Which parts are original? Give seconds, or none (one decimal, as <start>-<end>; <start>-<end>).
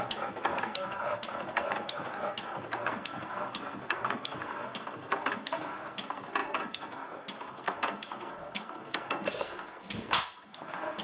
none